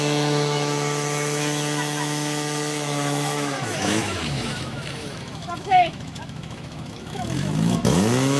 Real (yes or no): no